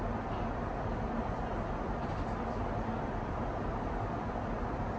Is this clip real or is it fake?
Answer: real